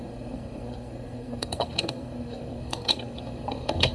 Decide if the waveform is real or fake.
fake